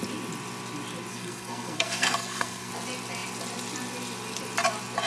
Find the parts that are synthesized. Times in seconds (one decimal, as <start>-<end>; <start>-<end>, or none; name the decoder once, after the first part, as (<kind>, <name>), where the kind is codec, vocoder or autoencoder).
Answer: 1.1-2.7 (codec, SNAC)